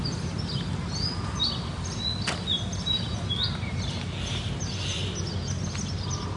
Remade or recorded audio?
recorded